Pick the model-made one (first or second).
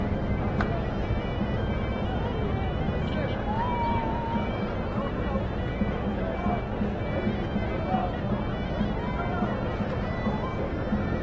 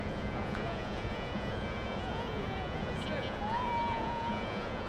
second